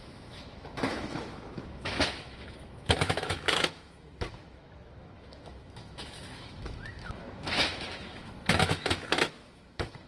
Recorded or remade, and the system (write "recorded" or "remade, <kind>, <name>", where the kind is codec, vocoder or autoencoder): remade, autoencoder, DAC-VAE